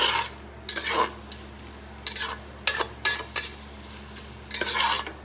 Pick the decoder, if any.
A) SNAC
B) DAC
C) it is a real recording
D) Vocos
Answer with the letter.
C